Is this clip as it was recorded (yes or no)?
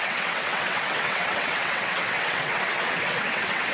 no